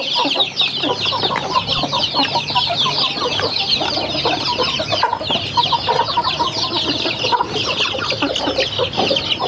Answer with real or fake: real